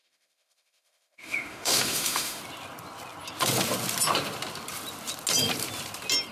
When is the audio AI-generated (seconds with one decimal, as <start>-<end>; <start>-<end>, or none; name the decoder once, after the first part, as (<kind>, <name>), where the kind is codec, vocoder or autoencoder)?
0.0-2.4 (autoencoder, DAC-VAE)